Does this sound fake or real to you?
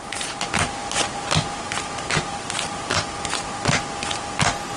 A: real